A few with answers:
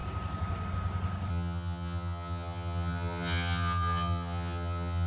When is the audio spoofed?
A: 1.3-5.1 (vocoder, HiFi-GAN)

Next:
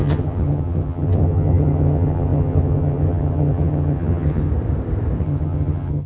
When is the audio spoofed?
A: 0.0-4.5 (vocoder, HiFi-GAN); 5.2-6.1

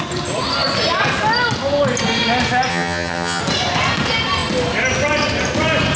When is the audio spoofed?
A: 2.7-3.4 (vocoder, HiFi-GAN)

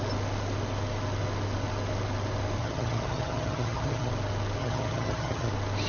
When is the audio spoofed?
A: 2.6-4.1 (vocoder, HiFi-GAN); 4.6-5.5

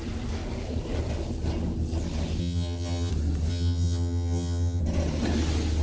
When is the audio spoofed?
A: 2.4-3.1 (vocoder, HiFi-GAN); 3.5-4.8

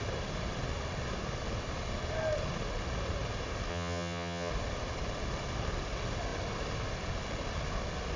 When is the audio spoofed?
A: 3.7-4.5 (vocoder, HiFi-GAN)

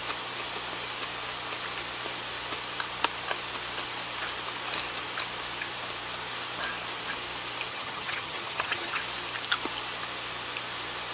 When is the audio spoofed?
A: 7.7-9.0 (vocoder, HiFi-GAN)